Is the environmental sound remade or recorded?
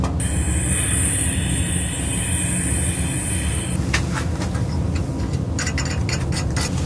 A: recorded